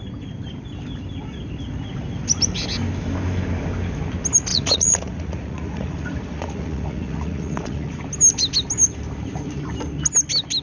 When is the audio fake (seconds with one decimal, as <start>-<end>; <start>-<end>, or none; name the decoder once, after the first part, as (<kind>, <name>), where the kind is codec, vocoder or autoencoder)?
4.5-8.0 (vocoder, Vocos)